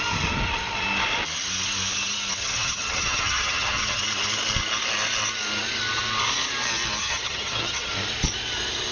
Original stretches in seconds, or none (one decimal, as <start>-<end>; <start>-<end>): 0.0-2.4; 4.0-7.0; 7.9-8.9

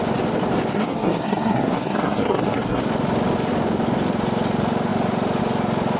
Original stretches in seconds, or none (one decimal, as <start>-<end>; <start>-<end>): 0.0-0.7; 2.8-6.0

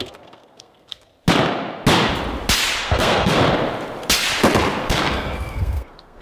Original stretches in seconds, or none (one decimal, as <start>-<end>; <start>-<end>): 1.1-2.8; 3.4-4.8